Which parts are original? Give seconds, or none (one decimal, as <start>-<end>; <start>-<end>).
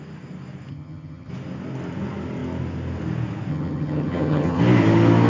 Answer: 0.0-0.7; 1.3-3.5; 4.6-5.3